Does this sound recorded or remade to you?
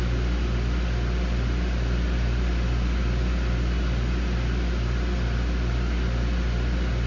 recorded